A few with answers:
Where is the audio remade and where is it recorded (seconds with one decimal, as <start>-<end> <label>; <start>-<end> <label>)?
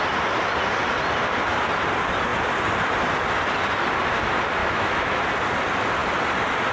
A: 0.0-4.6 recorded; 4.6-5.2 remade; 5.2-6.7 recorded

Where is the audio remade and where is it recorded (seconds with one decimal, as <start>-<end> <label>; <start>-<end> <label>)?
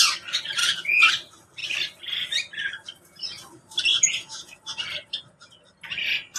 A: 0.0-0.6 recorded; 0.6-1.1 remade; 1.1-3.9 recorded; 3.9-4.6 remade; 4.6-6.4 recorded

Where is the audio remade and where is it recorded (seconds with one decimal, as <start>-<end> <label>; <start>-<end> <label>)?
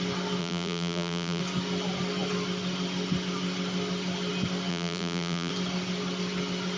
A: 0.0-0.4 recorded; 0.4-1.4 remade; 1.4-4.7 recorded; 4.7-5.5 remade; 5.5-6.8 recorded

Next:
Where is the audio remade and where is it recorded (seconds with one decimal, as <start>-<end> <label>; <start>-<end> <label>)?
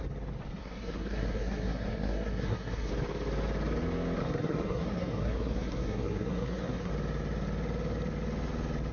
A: 0.0-0.6 recorded; 0.6-2.9 remade; 2.9-4.2 recorded; 4.2-6.9 remade; 6.9-8.9 recorded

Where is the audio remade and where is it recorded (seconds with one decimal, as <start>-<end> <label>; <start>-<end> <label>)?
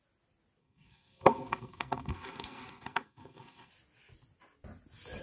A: 0.0-0.6 recorded; 0.6-3.7 remade; 3.7-5.2 recorded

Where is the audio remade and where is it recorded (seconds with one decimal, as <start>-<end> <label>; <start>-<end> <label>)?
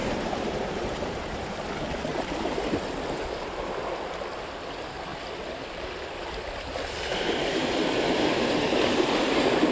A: 0.0-1.7 remade; 1.7-2.1 recorded; 2.1-2.8 remade; 2.8-9.7 recorded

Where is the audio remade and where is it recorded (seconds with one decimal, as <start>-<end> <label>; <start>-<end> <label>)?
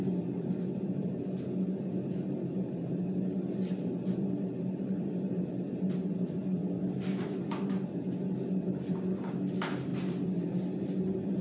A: 0.0-9.9 remade; 9.9-10.8 recorded; 10.8-11.4 remade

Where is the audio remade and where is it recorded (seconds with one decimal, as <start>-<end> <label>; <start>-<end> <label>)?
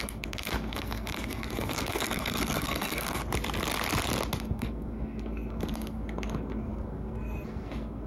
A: 0.0-3.2 remade; 3.2-4.4 recorded; 4.4-8.1 remade